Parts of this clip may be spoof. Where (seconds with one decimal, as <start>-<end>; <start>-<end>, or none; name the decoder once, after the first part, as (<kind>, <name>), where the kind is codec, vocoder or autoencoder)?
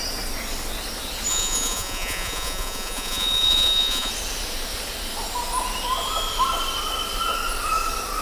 1.3-4.1 (vocoder, Vocos)